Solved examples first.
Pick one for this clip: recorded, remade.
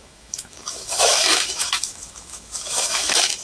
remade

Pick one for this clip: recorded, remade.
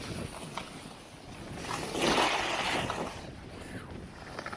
recorded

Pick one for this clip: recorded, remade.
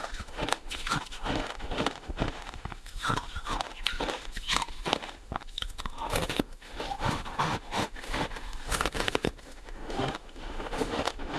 remade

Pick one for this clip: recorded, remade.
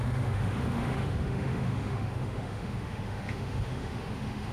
remade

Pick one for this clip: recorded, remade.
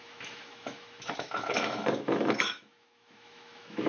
remade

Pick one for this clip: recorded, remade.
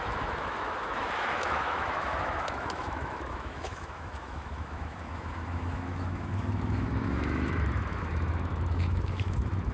remade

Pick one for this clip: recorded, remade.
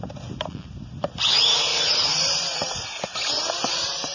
recorded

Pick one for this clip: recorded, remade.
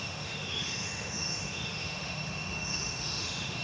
remade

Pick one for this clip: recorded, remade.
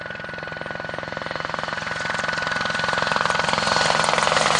recorded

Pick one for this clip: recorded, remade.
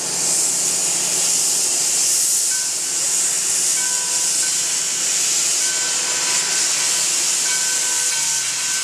recorded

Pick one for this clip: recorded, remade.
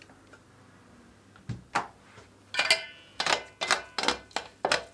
recorded